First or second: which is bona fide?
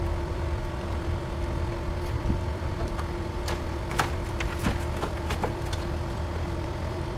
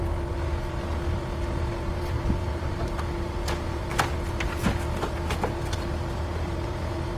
second